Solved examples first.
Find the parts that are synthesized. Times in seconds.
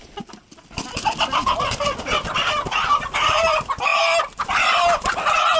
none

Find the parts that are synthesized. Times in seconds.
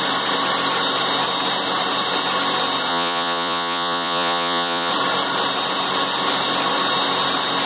2.9-4.9 (vocoder, Vocos)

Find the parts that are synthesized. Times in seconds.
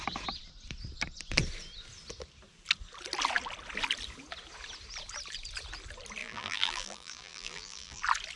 6.2-8.0 (vocoder, BigVGAN v2)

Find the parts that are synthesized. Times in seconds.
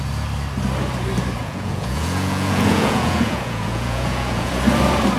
1.4-4.5 (vocoder, Vocos)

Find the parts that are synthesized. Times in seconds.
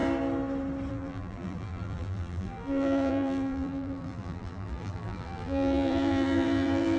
0.9-7.0 (vocoder, BigVGAN v2)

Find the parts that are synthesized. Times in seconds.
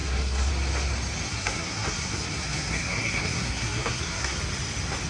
0.0-0.5 (codec, SNAC); 1.3-4.4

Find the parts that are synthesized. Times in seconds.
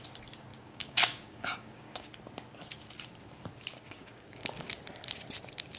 0.5-2.1 (codec, DAC); 3.7-4.7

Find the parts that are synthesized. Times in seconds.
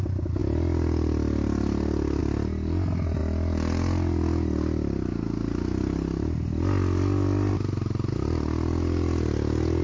none